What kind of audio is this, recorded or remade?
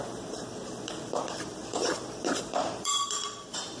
remade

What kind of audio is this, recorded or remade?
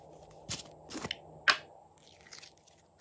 recorded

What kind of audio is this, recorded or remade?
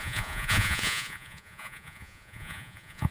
remade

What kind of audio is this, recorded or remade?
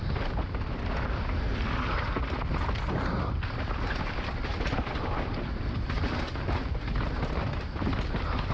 recorded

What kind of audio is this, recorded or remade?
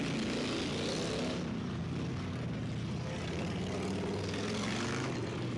recorded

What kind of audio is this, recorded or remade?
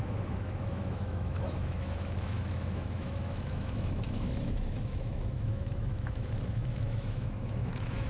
remade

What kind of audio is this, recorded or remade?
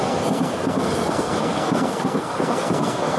remade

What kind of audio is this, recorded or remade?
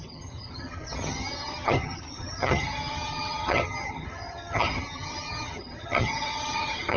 remade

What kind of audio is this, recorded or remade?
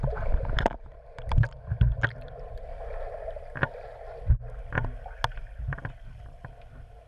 recorded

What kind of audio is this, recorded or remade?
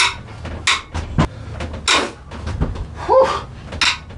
recorded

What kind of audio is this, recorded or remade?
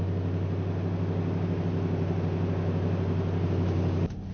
recorded